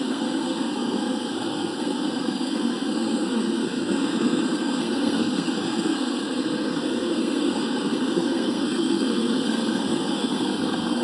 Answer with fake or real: fake